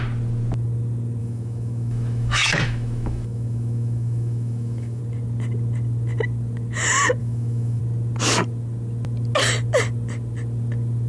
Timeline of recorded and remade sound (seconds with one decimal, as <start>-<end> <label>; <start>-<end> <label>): 0.0-1.2 recorded; 1.2-5.0 remade; 5.0-7.2 recorded; 7.2-7.8 remade; 7.8-11.1 recorded